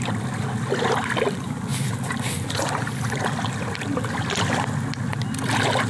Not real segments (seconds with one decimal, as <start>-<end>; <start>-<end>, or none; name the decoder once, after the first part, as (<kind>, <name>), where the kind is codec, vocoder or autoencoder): none